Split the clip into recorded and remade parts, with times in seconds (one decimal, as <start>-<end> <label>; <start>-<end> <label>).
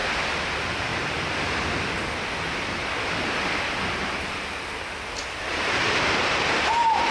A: 0.0-0.9 remade; 0.9-5.2 recorded; 5.2-7.1 remade